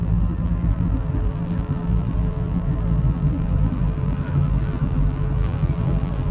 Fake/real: fake